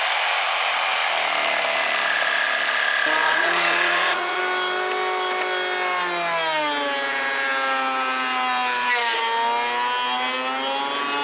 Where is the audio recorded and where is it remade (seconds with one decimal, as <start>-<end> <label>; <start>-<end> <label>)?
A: 0.0-3.2 recorded; 3.2-4.4 remade; 4.4-11.2 recorded